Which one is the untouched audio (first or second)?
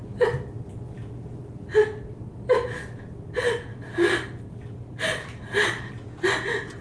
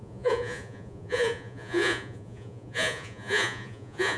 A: first